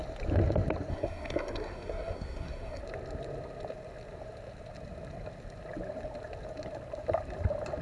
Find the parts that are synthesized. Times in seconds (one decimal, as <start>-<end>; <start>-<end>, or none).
0.9-2.8